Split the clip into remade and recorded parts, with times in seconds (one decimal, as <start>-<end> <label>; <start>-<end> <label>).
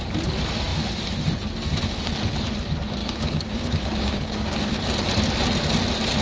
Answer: 0.0-3.0 recorded; 3.0-4.8 remade; 4.8-6.2 recorded